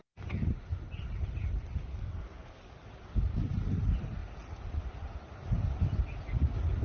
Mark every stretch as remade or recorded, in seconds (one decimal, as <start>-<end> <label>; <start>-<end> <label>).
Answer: 0.0-1.9 recorded; 1.9-2.6 remade; 2.6-6.8 recorded